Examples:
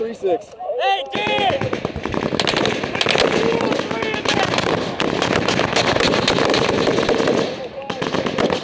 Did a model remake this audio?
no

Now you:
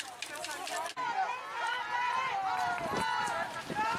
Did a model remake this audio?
no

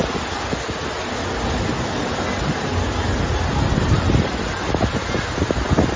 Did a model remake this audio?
no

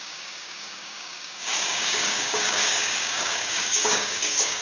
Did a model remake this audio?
yes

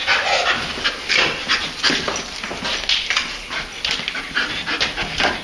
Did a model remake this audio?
no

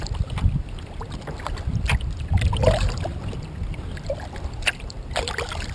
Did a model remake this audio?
yes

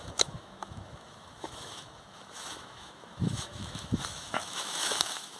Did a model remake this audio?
yes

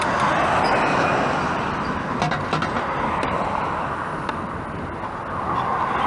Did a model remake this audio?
no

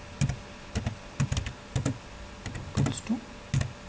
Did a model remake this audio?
no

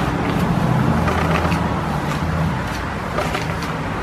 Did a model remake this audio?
no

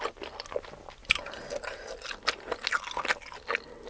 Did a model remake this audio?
no